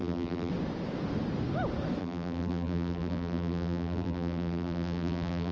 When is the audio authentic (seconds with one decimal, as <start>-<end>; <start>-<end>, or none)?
0.5-2.0